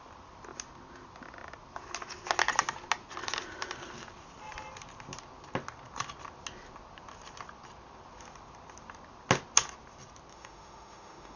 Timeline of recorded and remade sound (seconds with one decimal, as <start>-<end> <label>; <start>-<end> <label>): 0.0-10.3 recorded; 10.3-11.4 remade